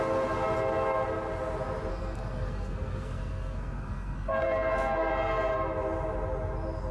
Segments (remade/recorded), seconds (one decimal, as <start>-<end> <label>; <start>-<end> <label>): 0.0-1.9 recorded; 1.9-5.1 remade; 5.1-6.9 recorded